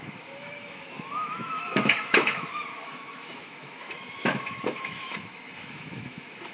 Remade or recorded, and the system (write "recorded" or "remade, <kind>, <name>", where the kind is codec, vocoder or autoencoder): remade, autoencoder, DAC-VAE